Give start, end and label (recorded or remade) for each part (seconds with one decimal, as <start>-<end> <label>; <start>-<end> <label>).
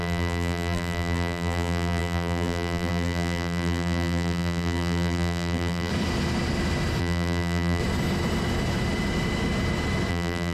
0.0-5.9 remade; 5.9-7.0 recorded; 7.0-7.8 remade; 7.8-10.1 recorded; 10.1-10.5 remade